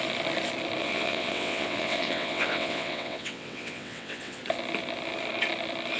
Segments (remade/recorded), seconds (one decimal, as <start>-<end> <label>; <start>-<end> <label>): 0.0-0.8 recorded; 0.8-4.4 remade; 4.4-6.0 recorded